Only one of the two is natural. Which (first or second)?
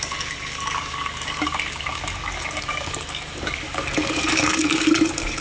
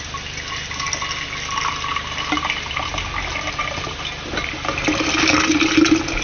second